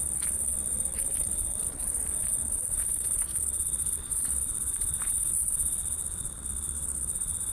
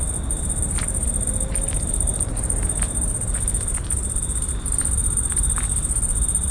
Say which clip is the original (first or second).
second